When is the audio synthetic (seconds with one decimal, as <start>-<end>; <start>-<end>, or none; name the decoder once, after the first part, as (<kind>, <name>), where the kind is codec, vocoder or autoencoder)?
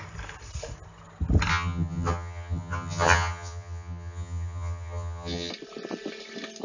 1.5-5.5 (vocoder, HiFi-GAN)